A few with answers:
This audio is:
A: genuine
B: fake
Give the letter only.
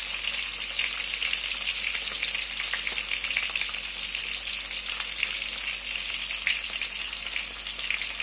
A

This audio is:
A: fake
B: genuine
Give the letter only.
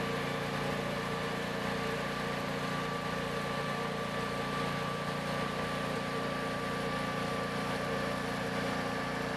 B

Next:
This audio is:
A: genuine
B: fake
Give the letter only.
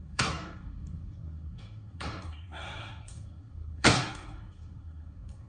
B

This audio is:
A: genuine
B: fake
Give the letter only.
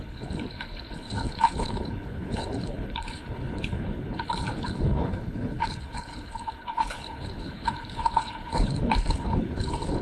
B